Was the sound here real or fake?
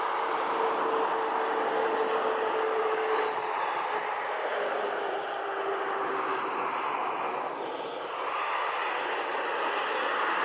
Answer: real